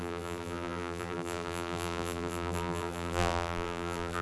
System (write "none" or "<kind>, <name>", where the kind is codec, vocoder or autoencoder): vocoder, BigVGAN v2